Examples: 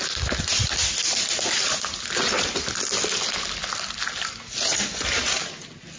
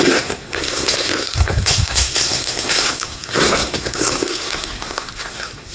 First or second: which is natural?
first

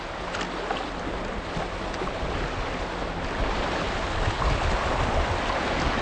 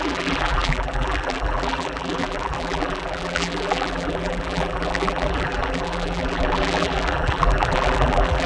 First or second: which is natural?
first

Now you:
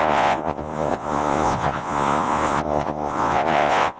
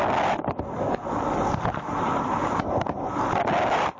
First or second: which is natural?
second